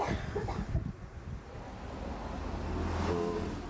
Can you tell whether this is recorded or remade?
recorded